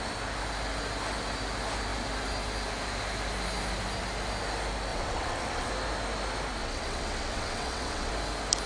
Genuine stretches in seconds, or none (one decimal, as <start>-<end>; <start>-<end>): 0.0-4.9; 5.7-6.6; 8.1-8.7